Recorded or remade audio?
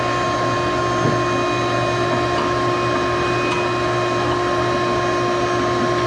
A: recorded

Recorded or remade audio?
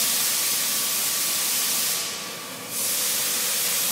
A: recorded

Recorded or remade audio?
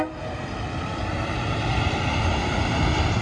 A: recorded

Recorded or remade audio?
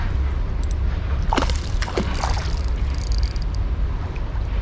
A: recorded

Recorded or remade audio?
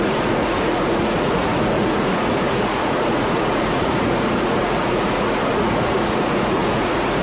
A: remade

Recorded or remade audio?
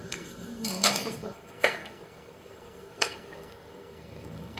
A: remade